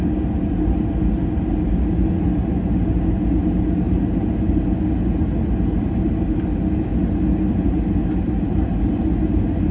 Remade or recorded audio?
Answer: recorded